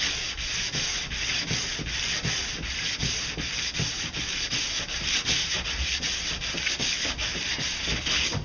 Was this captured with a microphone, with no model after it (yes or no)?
yes